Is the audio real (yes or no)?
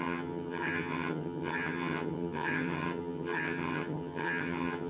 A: no